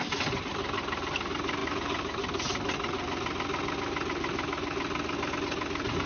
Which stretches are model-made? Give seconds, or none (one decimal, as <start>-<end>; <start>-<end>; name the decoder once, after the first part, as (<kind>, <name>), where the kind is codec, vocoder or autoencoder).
none